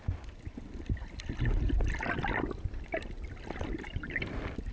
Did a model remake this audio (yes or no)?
no